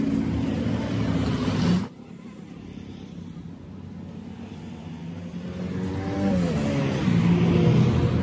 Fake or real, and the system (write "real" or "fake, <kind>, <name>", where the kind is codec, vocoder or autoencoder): real